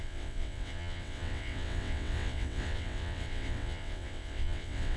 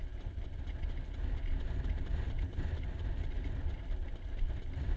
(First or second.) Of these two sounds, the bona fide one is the second